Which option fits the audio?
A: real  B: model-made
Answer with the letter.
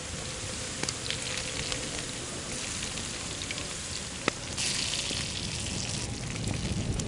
A